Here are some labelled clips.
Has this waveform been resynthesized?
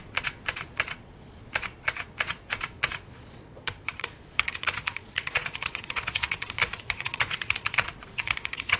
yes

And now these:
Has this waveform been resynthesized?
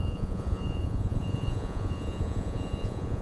yes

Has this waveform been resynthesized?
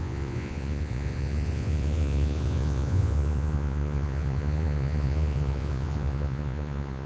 yes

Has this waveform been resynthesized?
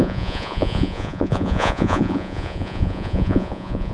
yes